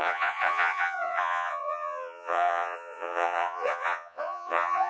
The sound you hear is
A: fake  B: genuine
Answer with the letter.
A